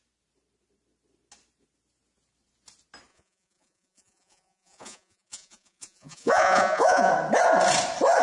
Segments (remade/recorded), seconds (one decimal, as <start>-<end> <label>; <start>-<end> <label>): 0.0-3.1 recorded; 3.1-7.1 remade; 7.1-8.2 recorded